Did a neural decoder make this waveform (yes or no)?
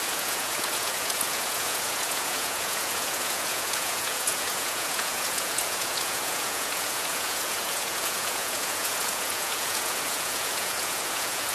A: yes